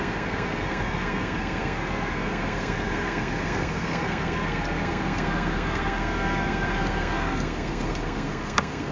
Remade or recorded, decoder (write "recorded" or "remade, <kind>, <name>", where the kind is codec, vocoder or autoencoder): remade, codec, SNAC